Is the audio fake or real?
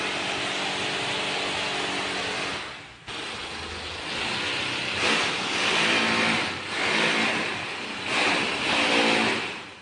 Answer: real